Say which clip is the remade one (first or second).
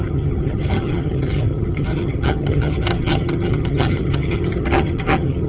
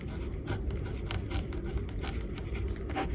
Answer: first